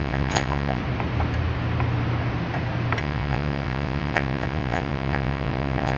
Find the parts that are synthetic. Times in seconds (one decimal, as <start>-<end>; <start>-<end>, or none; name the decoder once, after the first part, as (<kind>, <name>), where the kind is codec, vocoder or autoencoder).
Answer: 0.0-0.8 (vocoder, WaveNeXt); 3.0-6.0